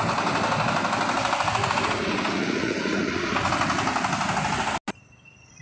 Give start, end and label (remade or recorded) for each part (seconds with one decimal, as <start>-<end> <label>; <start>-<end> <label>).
0.0-1.6 recorded; 1.6-3.5 remade; 3.5-5.6 recorded